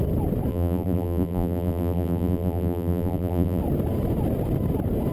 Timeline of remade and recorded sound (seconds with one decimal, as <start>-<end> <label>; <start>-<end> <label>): 0.0-0.5 recorded; 0.5-3.6 remade; 3.6-5.1 recorded